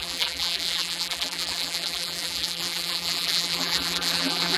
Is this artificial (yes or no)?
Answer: yes